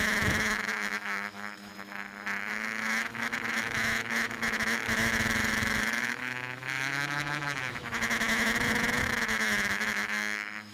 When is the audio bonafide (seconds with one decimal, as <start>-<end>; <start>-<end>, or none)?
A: 1.7-2.5